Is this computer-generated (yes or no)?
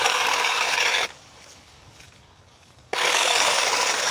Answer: yes